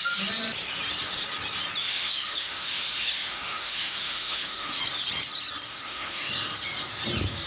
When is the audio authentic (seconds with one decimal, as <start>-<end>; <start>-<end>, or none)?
0.0-1.8; 4.8-5.7; 6.3-7.5

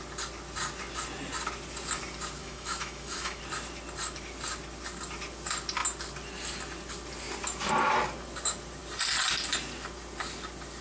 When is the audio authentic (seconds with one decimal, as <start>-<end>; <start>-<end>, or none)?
0.0-2.4; 3.4-10.8

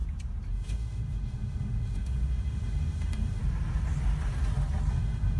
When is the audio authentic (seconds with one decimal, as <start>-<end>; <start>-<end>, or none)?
0.0-0.5; 3.4-4.9

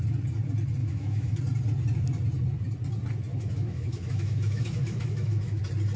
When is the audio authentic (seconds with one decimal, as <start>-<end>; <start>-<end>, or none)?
0.0-0.8; 1.4-3.3; 5.6-6.0

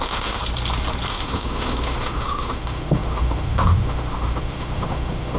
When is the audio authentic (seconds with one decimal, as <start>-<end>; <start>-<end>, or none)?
0.4-1.1

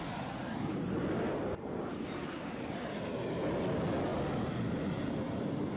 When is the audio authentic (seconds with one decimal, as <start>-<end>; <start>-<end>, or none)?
0.0-5.8

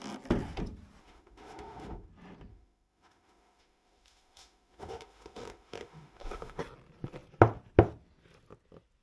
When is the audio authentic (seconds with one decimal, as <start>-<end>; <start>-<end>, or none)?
0.0-1.0; 2.1-2.5; 6.6-9.0